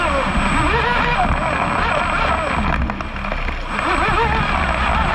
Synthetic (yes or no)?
no